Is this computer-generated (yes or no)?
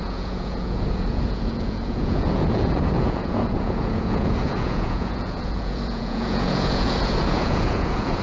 yes